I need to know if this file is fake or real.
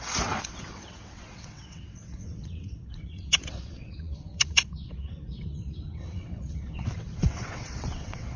fake